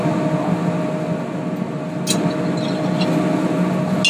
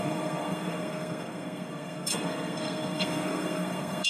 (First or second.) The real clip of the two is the first